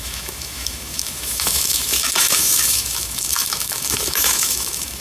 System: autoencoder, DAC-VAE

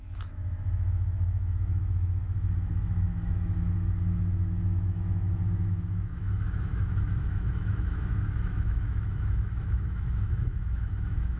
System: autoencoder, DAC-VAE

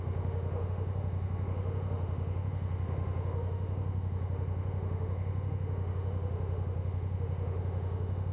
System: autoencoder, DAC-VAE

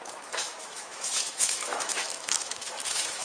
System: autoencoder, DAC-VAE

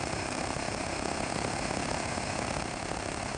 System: autoencoder, DAC-VAE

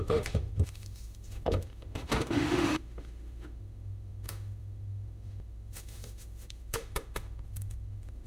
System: autoencoder, DAC-VAE